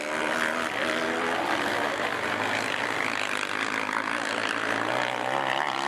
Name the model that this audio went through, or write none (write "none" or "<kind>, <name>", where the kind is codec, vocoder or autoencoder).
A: none